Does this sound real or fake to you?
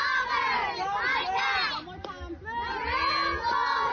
real